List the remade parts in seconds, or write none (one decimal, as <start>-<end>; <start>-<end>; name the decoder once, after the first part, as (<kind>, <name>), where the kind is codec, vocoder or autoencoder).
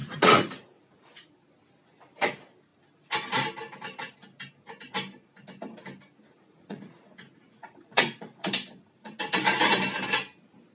0.0-1.3 (vocoder, Vocos); 6.3-8.5